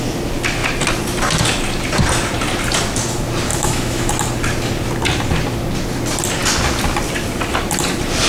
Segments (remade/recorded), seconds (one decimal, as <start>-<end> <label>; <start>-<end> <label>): 0.0-3.5 recorded; 3.5-4.1 remade; 4.1-8.3 recorded